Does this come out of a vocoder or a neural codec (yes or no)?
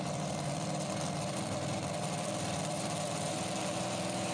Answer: yes